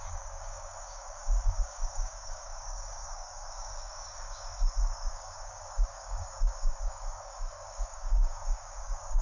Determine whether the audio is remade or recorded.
remade